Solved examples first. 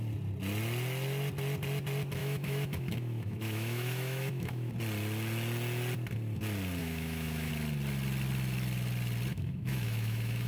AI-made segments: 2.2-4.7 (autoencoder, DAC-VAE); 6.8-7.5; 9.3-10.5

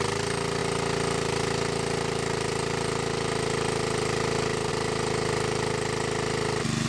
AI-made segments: none

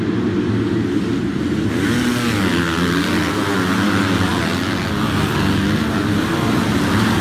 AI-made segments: none

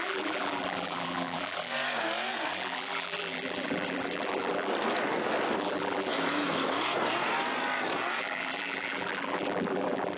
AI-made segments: 0.0-1.7 (vocoder, BigVGAN v2); 2.5-4.7; 5.6-6.1; 8.2-10.2